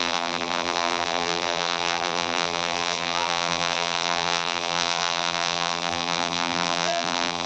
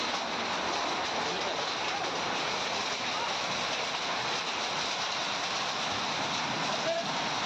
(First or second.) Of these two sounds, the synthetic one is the first